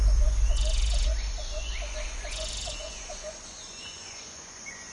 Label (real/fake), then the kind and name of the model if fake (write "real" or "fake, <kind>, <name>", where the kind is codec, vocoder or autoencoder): fake, vocoder, Vocos